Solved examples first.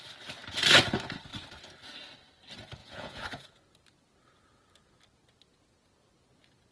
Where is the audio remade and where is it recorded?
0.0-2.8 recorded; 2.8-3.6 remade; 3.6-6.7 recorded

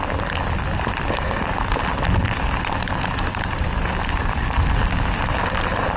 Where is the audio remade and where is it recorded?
0.0-6.0 recorded

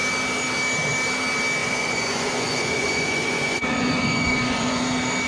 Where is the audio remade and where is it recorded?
0.0-1.6 recorded; 1.6-4.8 remade; 4.8-5.3 recorded

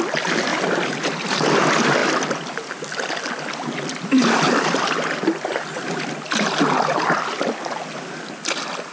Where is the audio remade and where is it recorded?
0.0-8.9 recorded

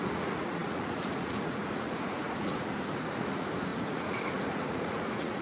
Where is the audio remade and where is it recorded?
0.0-5.4 remade

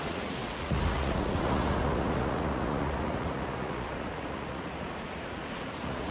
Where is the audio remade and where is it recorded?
0.0-6.1 remade

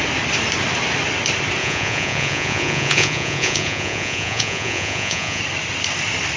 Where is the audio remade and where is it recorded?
0.0-1.6 recorded; 1.6-5.4 remade; 5.4-6.4 recorded